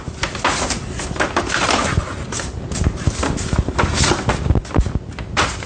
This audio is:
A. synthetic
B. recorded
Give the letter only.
B